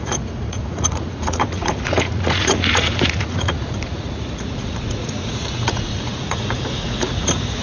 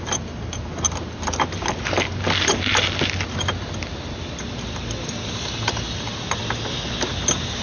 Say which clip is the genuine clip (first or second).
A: second